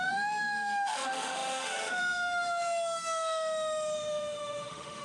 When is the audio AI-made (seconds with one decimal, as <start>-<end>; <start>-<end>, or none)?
0.0-5.0